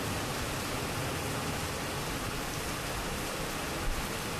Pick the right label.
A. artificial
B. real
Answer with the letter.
B